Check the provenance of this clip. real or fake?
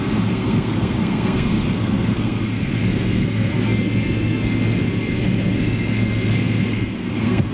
fake